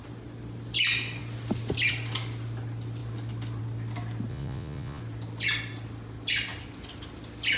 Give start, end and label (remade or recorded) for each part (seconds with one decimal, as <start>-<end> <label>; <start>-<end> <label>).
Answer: 0.0-4.3 recorded; 4.3-5.0 remade; 5.0-7.6 recorded